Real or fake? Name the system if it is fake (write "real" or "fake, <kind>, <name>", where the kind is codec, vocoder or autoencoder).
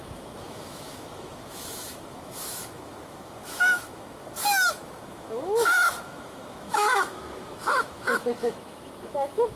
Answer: fake, autoencoder, DAC-VAE